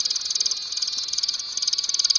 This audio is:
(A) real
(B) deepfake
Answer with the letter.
A